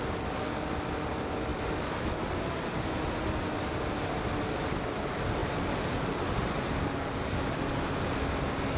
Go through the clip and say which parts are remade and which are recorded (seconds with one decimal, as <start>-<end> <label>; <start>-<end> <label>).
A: 0.0-8.8 recorded

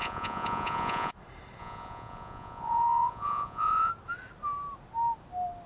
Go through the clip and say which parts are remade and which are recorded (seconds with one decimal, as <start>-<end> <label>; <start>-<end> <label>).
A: 0.0-1.1 remade; 1.1-1.6 recorded; 1.6-3.9 remade; 3.9-5.7 recorded

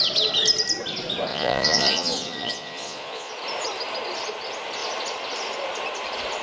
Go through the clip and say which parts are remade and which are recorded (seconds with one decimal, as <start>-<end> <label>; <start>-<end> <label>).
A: 0.0-1.3 recorded; 1.3-3.3 remade; 3.3-6.4 recorded

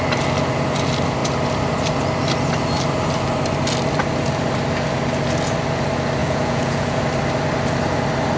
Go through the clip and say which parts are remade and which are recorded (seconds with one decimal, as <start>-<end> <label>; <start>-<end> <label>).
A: 0.0-6.2 recorded; 6.2-7.0 remade; 7.0-8.4 recorded

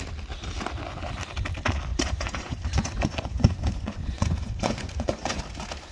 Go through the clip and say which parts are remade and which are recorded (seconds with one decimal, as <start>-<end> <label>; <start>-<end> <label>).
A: 0.0-1.9 recorded; 1.9-5.4 remade; 5.4-5.9 recorded

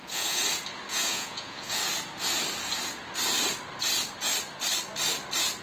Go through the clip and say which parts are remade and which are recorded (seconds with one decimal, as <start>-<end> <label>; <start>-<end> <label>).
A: 0.0-0.4 remade; 0.4-0.9 recorded; 0.9-1.8 remade; 1.8-5.6 recorded

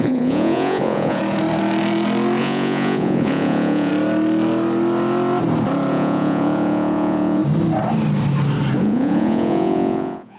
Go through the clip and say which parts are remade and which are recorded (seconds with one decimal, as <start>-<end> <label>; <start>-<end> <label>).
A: 0.0-1.2 remade; 1.2-2.4 recorded; 2.4-3.9 remade; 3.9-5.9 recorded; 5.9-7.4 remade; 7.4-8.8 recorded; 8.8-10.4 remade

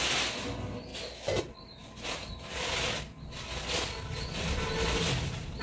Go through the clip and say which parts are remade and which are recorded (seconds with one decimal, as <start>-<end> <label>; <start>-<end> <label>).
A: 0.0-5.6 recorded